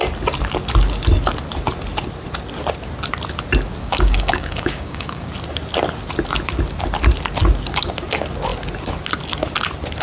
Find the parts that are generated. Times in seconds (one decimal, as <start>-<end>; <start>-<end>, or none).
3.8-5.3

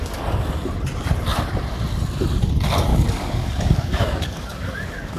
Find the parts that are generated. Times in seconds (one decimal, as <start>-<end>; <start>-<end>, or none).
2.9-5.2

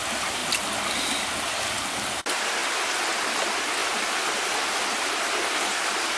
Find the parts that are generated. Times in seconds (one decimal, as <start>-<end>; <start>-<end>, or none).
none